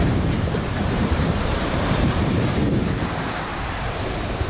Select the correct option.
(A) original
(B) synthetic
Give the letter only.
B